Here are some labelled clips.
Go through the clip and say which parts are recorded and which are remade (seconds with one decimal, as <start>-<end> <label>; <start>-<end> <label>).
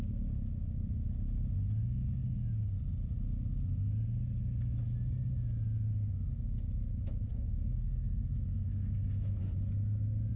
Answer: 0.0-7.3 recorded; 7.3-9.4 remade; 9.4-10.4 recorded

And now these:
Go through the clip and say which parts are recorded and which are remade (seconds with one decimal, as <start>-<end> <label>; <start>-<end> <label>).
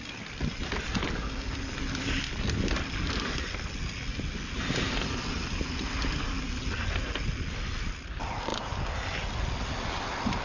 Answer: 0.0-10.4 recorded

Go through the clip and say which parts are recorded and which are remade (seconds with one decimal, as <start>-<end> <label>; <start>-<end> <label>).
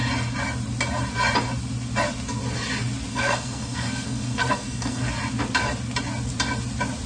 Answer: 0.0-3.1 recorded; 3.1-5.1 remade; 5.1-7.1 recorded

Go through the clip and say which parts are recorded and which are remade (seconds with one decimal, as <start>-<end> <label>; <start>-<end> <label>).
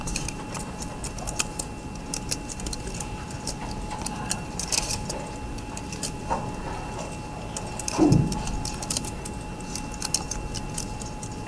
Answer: 0.0-3.6 recorded; 3.6-4.7 remade; 4.7-11.5 recorded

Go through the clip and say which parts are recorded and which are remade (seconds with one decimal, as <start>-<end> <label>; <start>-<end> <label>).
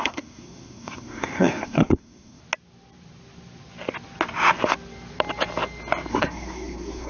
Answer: 0.0-2.4 remade; 2.4-6.1 recorded; 6.1-7.1 remade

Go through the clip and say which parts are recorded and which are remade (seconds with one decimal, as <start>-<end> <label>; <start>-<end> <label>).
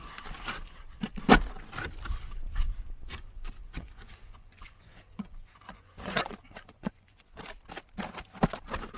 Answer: 0.0-3.1 recorded; 3.1-7.4 remade; 7.4-9.0 recorded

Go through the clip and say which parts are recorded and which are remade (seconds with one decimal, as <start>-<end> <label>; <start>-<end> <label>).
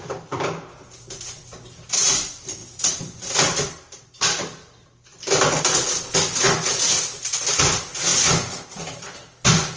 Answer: 0.0-8.1 remade; 8.1-8.7 recorded; 8.7-9.8 remade